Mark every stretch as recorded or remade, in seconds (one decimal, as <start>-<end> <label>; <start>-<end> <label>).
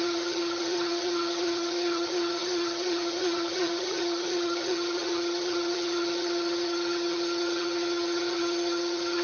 0.0-9.2 remade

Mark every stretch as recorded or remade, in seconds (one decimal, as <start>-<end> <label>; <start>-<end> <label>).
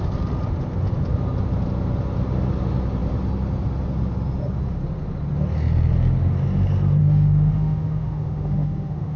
0.0-7.0 recorded; 7.0-9.2 remade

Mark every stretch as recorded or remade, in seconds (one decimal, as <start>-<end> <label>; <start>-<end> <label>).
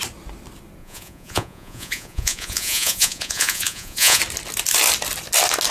0.0-0.8 recorded; 0.8-4.2 remade; 4.2-5.7 recorded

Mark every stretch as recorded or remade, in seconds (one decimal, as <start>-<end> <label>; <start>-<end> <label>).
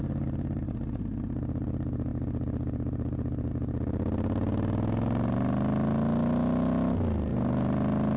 0.0-8.2 recorded